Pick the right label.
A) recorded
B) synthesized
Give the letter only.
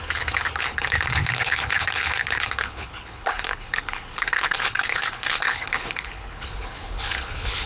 B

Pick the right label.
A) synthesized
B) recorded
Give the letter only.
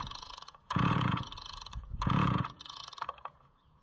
A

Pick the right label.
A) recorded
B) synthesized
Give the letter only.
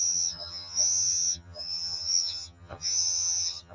B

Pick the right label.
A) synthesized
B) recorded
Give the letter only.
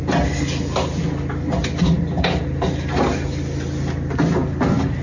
B